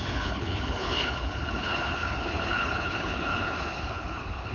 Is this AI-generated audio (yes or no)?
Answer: yes